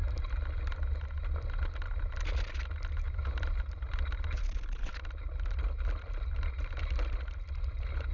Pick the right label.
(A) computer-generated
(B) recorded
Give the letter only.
B